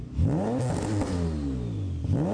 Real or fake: real